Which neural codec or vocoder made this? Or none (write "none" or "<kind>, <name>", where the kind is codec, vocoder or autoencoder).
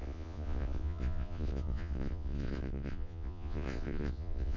vocoder, Vocos